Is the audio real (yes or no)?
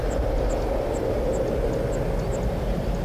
yes